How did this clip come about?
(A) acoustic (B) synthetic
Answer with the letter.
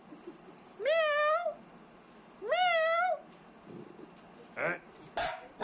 A